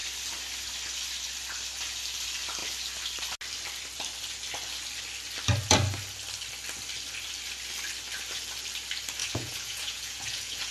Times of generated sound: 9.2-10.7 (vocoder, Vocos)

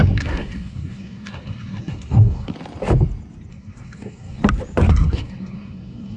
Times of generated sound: 0.0-2.5 (codec, SNAC); 3.5-4.4; 4.9-6.2